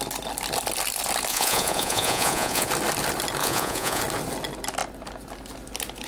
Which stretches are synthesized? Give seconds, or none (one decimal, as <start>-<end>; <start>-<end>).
1.3-2.7; 3.4-4.0